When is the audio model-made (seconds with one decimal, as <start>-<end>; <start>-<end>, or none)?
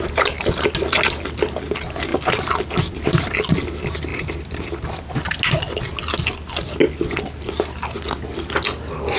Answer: none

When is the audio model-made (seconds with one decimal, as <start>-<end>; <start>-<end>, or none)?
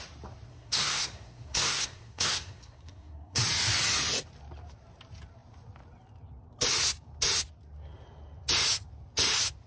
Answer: 0.5-3.4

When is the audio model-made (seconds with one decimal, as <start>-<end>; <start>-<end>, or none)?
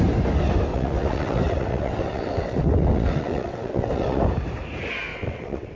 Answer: 0.7-4.2; 5.1-5.8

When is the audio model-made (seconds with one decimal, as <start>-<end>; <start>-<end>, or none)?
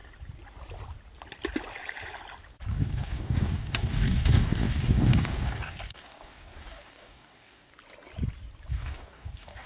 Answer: 2.7-7.7; 8.7-9.7